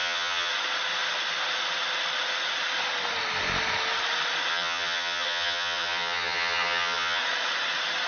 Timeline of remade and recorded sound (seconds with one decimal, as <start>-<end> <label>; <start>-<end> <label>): 0.0-0.5 remade; 0.5-4.5 recorded; 4.5-7.2 remade; 7.2-8.1 recorded